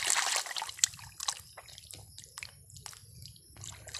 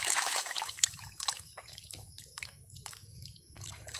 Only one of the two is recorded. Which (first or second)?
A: first